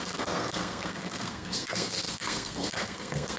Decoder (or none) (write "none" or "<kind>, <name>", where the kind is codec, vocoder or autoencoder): codec, SNAC